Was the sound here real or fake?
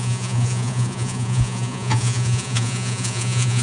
fake